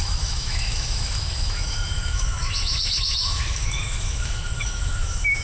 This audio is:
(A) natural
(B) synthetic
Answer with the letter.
B